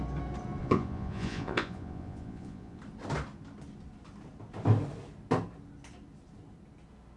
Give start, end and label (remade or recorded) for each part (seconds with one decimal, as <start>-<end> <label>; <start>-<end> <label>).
0.0-0.6 recorded; 0.6-2.8 remade; 2.8-7.2 recorded